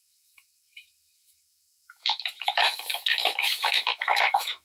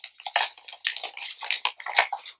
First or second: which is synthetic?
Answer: first